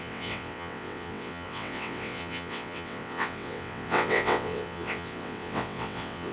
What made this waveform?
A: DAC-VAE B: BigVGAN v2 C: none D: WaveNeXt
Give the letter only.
D